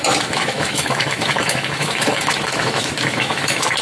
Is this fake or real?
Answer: fake